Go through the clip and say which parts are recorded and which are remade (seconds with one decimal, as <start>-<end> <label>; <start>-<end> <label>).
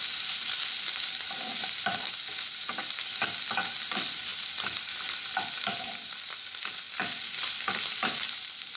0.0-8.8 recorded